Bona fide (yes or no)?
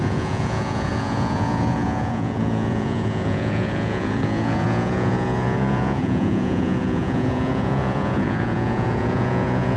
no